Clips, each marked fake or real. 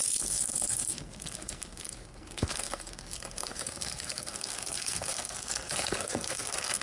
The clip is fake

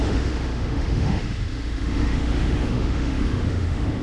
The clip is fake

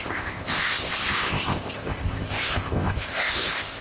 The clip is fake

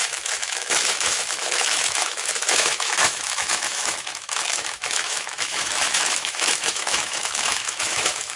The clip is fake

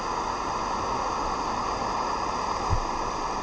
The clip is real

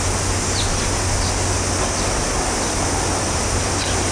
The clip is real